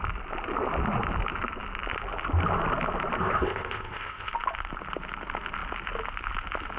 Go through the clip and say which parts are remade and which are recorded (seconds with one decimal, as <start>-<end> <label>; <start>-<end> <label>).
0.0-3.2 recorded; 3.2-4.3 remade; 4.3-6.8 recorded